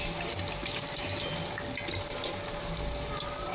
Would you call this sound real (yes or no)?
yes